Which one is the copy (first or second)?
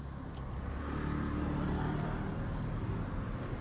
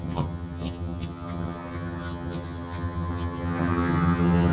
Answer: second